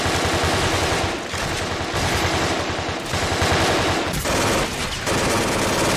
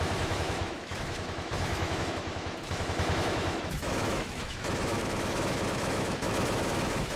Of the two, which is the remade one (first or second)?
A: second